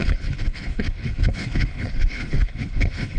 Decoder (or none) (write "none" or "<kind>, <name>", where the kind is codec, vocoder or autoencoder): codec, HILCodec